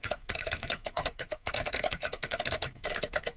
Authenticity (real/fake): fake